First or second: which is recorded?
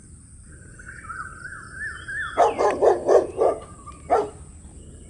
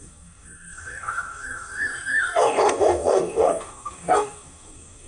first